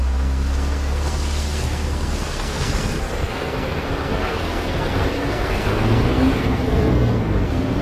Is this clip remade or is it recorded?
remade